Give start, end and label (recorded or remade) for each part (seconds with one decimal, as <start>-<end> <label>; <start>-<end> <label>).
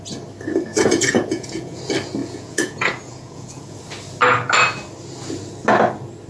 0.0-0.7 recorded; 0.7-1.8 remade; 1.8-2.2 recorded; 2.2-3.8 remade; 3.8-6.3 recorded